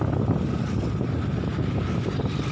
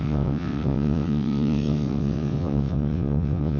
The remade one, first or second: second